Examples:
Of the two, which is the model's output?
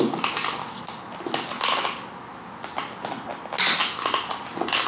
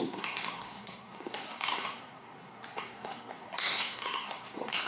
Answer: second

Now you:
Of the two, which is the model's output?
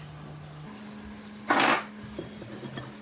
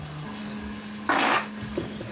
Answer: second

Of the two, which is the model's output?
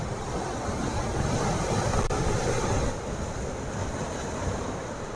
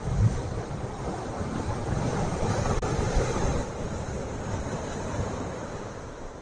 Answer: second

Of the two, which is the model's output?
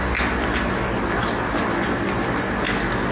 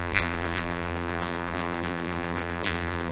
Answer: second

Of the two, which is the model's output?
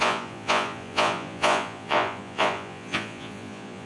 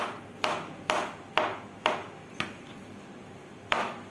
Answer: first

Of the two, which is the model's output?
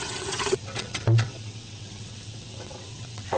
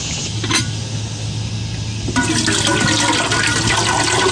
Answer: first